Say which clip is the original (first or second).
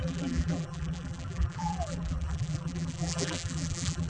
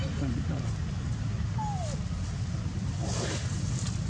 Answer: second